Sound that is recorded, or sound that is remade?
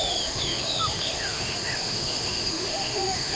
remade